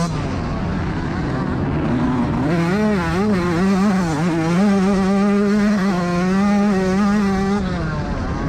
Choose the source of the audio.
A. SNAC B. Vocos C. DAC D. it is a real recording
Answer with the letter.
D